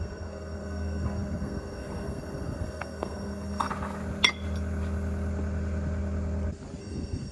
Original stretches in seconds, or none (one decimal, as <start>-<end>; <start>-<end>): 3.7-6.8